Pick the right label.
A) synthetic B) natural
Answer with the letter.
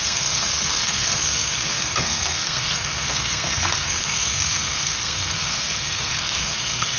A